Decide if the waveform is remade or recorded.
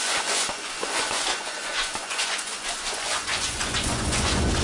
remade